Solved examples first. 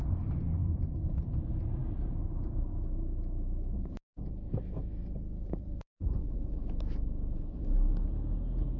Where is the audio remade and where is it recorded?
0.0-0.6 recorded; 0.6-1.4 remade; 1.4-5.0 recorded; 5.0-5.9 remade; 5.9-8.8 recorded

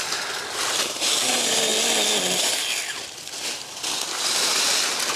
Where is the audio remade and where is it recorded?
0.0-1.7 remade; 1.7-4.6 recorded; 4.6-5.2 remade

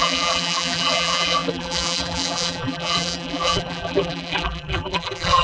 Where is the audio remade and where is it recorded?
0.0-5.4 remade

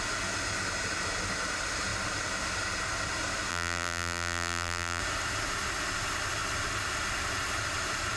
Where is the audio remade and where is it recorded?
0.0-3.5 recorded; 3.5-5.0 remade; 5.0-8.2 recorded

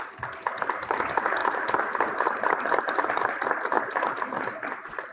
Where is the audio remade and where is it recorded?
0.0-1.4 recorded; 1.4-3.2 remade; 3.2-5.1 recorded